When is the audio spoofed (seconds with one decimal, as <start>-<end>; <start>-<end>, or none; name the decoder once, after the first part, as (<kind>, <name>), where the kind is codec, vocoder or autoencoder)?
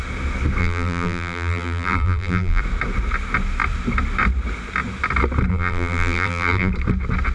0.6-2.6 (vocoder, BigVGAN v2); 5.5-6.7